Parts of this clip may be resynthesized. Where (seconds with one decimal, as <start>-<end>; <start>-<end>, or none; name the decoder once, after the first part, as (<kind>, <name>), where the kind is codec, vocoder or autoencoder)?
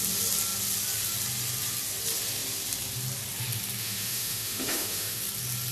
3.8-5.2 (autoencoder, DAC-VAE)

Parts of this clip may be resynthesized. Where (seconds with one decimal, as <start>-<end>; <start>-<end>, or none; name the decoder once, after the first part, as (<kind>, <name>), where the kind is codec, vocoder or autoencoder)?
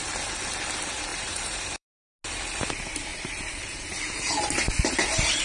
1.1-1.9 (vocoder, BigVGAN v2); 3.1-5.4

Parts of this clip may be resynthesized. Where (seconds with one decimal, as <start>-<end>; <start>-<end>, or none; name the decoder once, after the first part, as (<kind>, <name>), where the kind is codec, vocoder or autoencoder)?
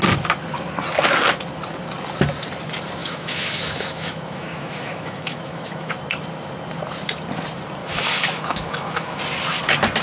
3.0-5.9 (autoencoder, DAC-VAE); 7.8-9.2